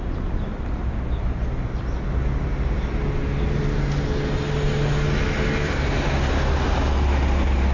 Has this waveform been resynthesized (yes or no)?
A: no